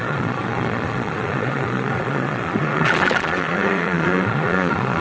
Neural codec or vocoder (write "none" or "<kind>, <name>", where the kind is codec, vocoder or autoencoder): vocoder, Vocos